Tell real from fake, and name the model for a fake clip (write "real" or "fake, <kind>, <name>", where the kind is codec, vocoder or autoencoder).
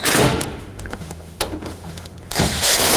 fake, autoencoder, DAC-VAE